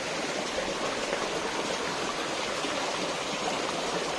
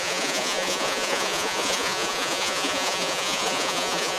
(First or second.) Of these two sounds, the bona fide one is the first